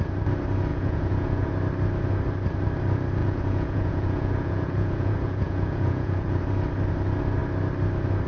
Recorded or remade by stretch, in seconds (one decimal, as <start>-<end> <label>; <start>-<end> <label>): 0.0-0.7 recorded; 0.7-1.5 remade; 1.5-3.2 recorded; 3.2-6.4 remade; 6.4-8.3 recorded